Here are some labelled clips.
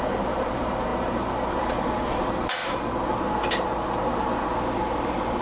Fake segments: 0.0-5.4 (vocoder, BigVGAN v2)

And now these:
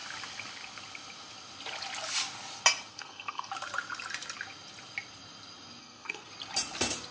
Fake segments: 2.9-3.5 (codec, SNAC); 5.8-6.3